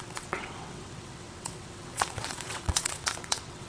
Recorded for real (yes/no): no